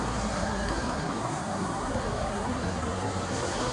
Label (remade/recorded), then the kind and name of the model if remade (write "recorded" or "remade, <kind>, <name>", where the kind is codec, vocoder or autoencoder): remade, codec, SNAC